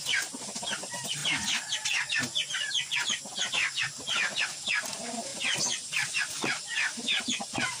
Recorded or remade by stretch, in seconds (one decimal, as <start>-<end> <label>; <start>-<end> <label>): 0.0-7.8 recorded